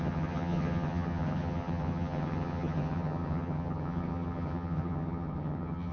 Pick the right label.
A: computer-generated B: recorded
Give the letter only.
A